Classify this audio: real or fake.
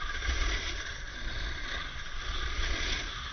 fake